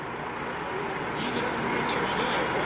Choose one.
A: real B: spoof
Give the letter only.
A